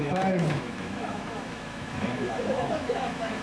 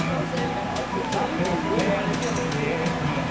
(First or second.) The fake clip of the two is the first